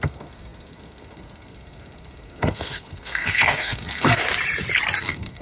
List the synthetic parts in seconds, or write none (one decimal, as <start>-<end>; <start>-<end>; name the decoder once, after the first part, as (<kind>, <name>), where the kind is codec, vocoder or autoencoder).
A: 0.0-4.2 (codec, SNAC); 5.0-5.4